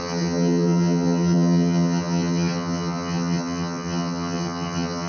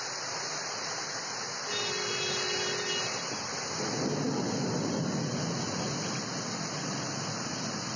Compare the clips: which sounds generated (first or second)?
first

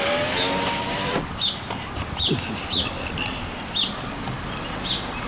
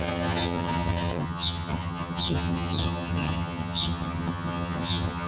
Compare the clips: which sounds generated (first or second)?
second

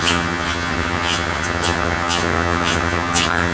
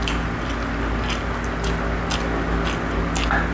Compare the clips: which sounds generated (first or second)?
first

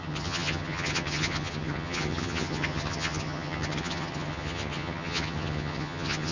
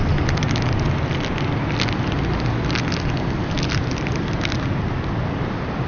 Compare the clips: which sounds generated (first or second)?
first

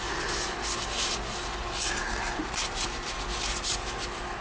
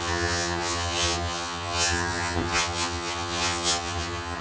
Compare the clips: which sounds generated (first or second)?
second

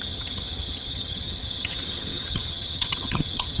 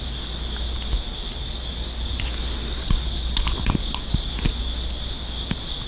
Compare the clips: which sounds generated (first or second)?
first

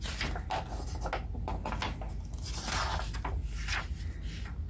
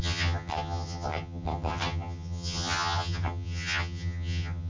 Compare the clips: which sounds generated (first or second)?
second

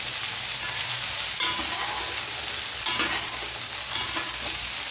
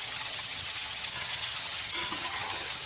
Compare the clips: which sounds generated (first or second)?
second